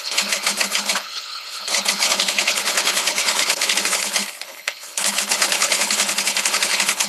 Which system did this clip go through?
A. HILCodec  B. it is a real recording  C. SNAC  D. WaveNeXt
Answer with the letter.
A